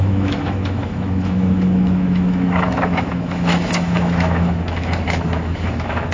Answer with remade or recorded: remade